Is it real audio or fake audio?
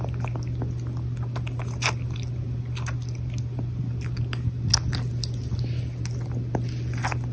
real